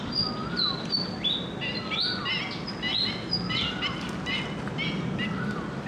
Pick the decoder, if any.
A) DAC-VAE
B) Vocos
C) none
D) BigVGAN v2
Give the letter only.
C